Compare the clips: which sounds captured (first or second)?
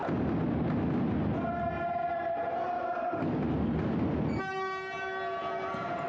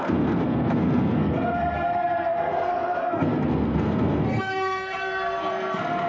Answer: first